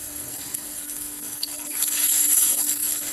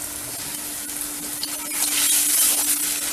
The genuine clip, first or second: second